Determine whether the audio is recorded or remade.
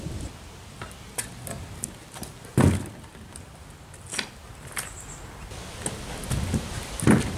recorded